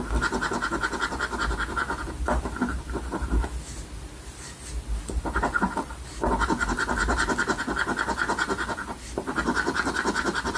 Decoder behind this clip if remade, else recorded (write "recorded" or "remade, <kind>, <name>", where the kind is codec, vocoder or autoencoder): recorded